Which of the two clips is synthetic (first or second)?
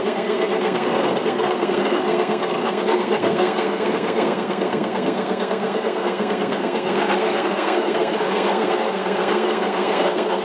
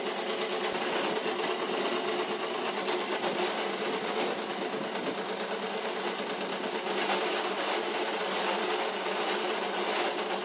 first